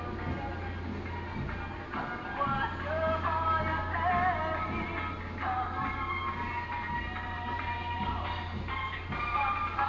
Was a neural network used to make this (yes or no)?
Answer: no